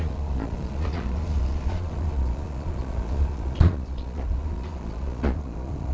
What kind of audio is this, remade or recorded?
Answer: remade